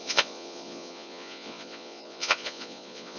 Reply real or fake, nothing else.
fake